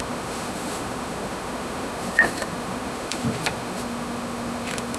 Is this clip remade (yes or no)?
yes